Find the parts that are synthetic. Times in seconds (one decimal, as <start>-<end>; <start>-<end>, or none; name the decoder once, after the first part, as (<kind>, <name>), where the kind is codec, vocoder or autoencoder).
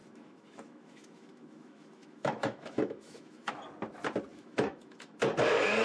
0.0-3.5 (autoencoder, DAC-VAE); 4.3-5.2